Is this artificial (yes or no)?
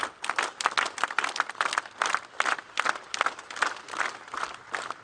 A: no